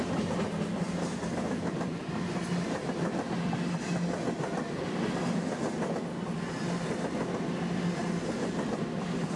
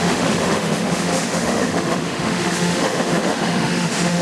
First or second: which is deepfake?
second